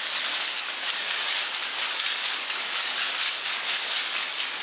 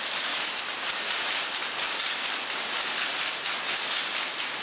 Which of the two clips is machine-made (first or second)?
first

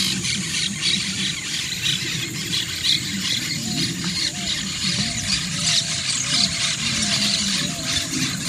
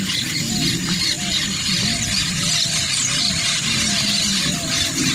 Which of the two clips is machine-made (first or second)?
first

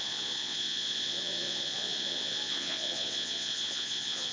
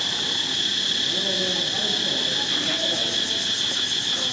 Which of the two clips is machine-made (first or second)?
first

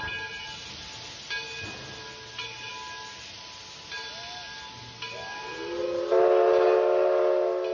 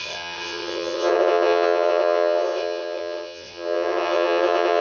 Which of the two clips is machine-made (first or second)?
second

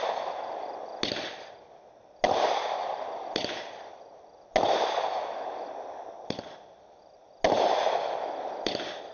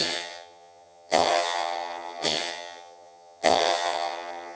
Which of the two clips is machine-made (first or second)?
second